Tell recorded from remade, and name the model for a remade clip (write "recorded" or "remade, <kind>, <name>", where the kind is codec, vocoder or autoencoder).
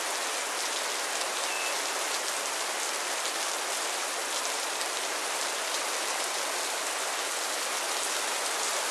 recorded